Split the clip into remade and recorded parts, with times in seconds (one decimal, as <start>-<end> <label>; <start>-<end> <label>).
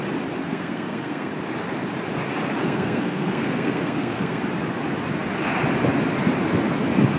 0.0-0.4 recorded; 0.4-1.3 remade; 1.3-2.6 recorded; 2.6-4.4 remade; 4.4-7.2 recorded